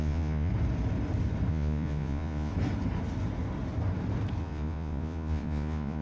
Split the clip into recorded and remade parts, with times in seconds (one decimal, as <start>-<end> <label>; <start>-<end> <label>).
0.0-0.5 remade; 0.5-1.5 recorded; 1.5-2.5 remade; 2.5-4.4 recorded; 4.4-6.0 remade